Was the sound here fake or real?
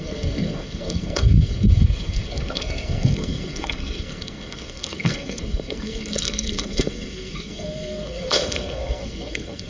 fake